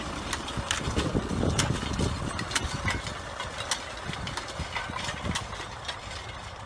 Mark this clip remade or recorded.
recorded